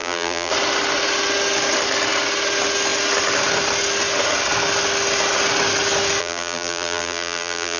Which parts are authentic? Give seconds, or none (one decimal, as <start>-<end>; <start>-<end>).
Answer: 0.5-6.2